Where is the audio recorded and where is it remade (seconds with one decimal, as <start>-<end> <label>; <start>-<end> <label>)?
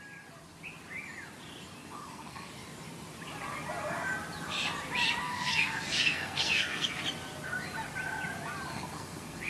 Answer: 0.0-1.8 recorded; 1.8-2.5 remade; 2.5-5.2 recorded; 5.2-7.0 remade; 7.0-8.7 recorded; 8.7-9.5 remade